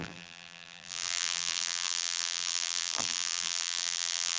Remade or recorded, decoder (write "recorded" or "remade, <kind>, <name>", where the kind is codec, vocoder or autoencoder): remade, vocoder, BigVGAN v2